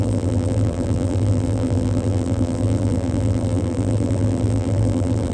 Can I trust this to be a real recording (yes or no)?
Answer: no